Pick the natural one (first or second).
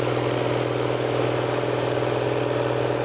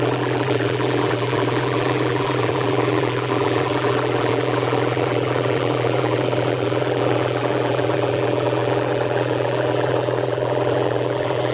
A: first